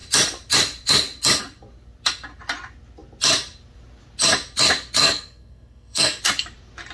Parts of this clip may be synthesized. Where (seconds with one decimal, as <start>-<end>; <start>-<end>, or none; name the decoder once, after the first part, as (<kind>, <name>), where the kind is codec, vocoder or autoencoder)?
5.0-6.2 (codec, SNAC)